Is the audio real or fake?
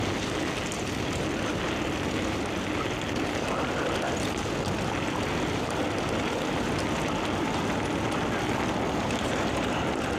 real